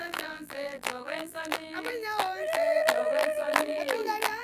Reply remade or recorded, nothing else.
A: remade